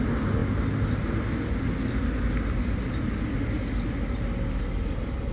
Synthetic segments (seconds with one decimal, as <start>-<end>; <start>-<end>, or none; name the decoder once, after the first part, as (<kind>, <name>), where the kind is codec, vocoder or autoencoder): none